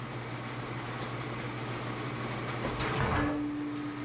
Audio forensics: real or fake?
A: real